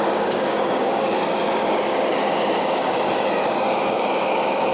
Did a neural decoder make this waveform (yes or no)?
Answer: yes